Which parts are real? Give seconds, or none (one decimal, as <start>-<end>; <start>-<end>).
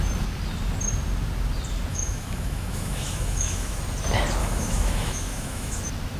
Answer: 0.0-1.9; 3.8-4.4; 5.8-6.2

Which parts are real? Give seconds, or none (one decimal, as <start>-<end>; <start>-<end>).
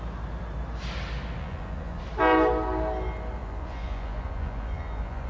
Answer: 0.0-1.4; 2.0-3.4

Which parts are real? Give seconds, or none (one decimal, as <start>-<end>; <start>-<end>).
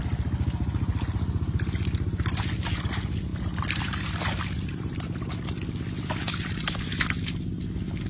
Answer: 0.0-8.1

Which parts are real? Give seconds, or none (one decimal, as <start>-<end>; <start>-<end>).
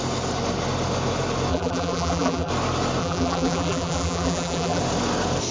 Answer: 0.0-1.5; 2.5-3.0; 4.8-5.5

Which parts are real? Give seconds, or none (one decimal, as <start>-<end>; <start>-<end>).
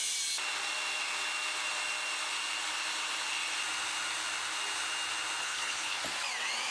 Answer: 0.0-5.4; 6.0-6.7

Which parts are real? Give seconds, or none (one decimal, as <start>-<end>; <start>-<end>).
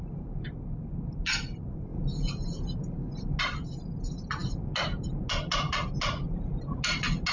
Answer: 0.0-7.3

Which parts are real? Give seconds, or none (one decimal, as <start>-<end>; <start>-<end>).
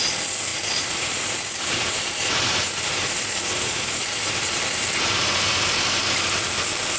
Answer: 0.0-0.5; 4.5-7.0